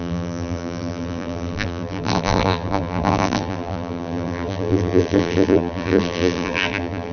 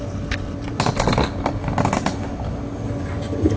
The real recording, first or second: second